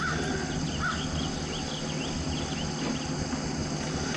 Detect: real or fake real